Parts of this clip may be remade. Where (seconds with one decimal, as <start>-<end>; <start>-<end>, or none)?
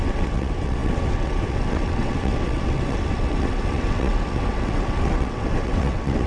0.0-6.3